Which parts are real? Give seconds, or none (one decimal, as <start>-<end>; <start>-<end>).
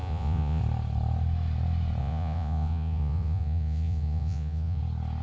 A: 0.6-2.0; 4.8-5.2